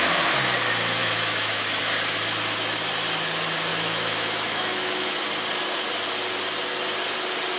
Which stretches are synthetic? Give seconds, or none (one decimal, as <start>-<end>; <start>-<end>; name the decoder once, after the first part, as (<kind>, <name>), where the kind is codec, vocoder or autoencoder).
1.0-1.8 (autoencoder, DAC-VAE); 3.7-5.2